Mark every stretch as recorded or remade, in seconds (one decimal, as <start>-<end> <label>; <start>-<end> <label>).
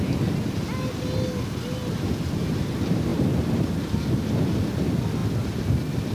0.0-6.1 recorded